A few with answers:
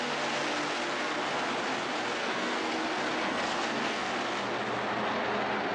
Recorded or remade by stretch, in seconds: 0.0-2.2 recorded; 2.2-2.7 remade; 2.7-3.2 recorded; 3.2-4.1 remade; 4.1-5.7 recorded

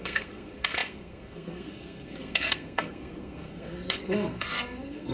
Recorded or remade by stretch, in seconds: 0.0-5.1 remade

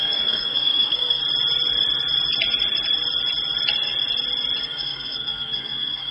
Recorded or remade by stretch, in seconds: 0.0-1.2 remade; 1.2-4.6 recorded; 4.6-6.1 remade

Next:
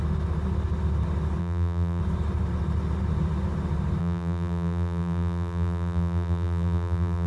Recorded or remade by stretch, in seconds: 0.0-1.4 recorded; 1.4-2.0 remade; 2.0-4.0 recorded; 4.0-7.3 remade

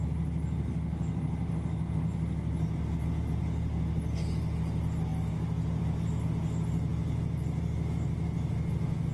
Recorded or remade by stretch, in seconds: 0.0-9.1 recorded

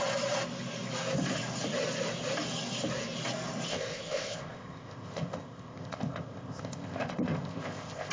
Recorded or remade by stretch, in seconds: 0.0-3.7 recorded; 3.7-8.1 remade

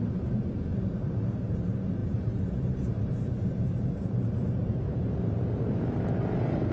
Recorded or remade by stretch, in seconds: 0.0-6.7 remade

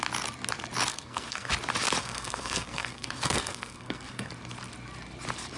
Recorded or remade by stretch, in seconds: 0.0-0.9 recorded; 0.9-1.5 remade; 1.5-2.0 recorded; 2.0-4.3 remade; 4.3-5.6 recorded